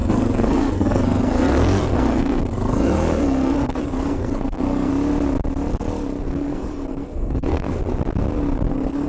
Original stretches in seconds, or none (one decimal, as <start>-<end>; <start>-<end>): 4.9-6.2; 7.8-8.7